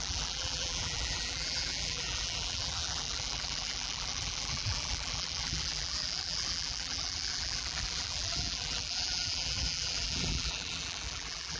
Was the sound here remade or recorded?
remade